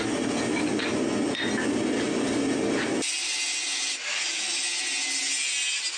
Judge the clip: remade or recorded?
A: recorded